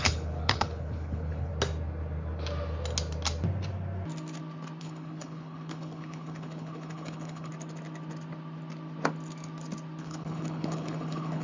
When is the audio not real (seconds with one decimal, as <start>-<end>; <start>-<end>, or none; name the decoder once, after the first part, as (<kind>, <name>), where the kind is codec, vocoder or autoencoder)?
0.0-1.5 (codec, HILCodec); 4.8-7.5; 10.0-11.4